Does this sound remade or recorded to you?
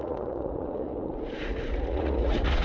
remade